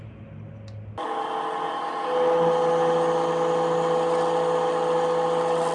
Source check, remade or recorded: recorded